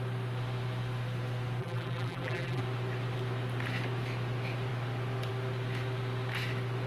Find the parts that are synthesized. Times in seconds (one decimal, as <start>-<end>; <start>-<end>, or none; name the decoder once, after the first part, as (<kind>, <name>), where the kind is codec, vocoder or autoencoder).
1.6-2.6 (vocoder, BigVGAN v2)